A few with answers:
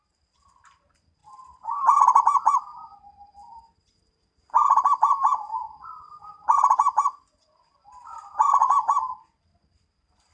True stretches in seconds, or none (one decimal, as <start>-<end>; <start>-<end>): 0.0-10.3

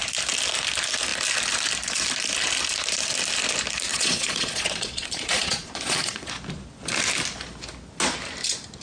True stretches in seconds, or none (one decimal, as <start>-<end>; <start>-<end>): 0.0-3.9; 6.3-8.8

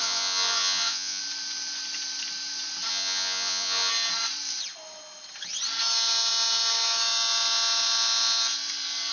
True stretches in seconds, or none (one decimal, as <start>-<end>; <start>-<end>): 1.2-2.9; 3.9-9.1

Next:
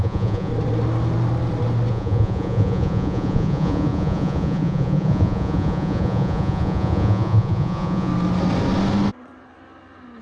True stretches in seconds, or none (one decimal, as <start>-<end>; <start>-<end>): 0.5-1.9; 8.1-10.2